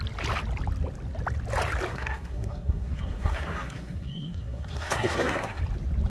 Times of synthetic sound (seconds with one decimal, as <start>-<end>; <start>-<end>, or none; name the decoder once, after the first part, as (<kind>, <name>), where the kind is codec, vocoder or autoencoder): 1.9-5.6 (codec, SNAC)